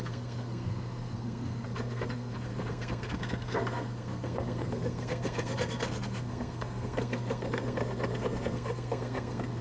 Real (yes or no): no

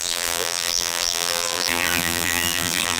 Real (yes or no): no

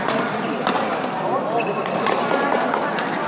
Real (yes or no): yes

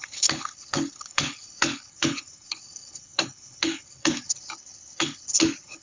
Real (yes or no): no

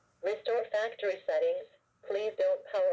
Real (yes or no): yes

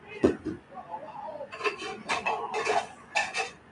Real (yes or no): no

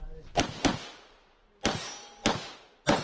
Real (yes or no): yes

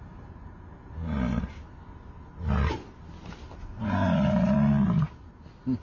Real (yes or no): yes